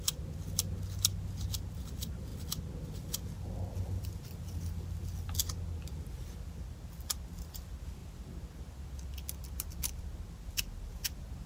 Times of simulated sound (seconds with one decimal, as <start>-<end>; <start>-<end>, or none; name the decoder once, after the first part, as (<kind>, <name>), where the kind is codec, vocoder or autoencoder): none

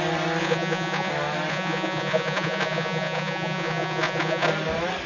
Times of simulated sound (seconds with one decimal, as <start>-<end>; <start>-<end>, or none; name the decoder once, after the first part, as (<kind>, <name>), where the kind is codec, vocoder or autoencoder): 0.4-1.1 (vocoder, Vocos); 1.5-4.5

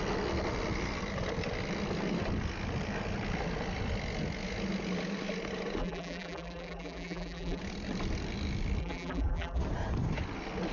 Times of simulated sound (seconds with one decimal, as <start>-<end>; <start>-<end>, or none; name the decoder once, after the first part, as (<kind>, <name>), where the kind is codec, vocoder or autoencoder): 5.8-7.6 (vocoder, BigVGAN v2); 8.8-9.6

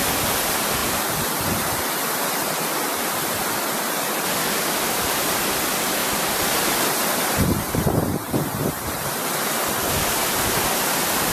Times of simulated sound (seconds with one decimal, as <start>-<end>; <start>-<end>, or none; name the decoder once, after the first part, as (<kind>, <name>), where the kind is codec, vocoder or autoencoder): 0.8-1.9 (vocoder, BigVGAN v2); 6.0-6.7

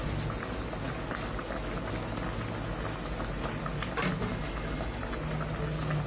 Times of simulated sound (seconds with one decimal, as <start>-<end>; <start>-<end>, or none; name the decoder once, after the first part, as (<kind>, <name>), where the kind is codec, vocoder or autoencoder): 4.3-5.0 (autoencoder, DAC-VAE)

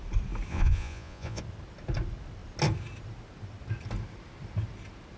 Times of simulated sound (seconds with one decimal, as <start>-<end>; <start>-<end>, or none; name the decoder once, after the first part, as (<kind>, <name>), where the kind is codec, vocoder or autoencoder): 0.5-1.4 (vocoder, Vocos)

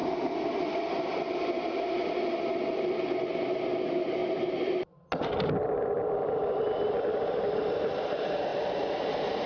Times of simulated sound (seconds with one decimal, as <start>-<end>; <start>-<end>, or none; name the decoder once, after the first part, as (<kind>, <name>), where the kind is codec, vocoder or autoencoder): 0.0-2.3 (vocoder, BigVGAN v2); 8.5-9.5

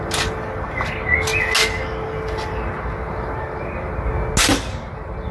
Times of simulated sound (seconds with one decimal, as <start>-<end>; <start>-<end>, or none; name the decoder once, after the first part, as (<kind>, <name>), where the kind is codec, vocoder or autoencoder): none